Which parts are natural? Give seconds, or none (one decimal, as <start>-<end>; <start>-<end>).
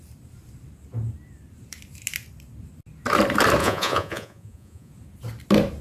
0.0-3.6; 4.9-5.8